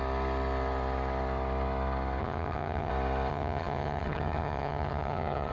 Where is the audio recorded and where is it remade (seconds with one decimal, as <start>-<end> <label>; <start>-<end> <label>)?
0.0-2.2 recorded; 2.2-2.9 remade; 2.9-3.3 recorded; 3.3-5.5 remade